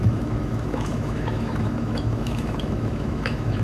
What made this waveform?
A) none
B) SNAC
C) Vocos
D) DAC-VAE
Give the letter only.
D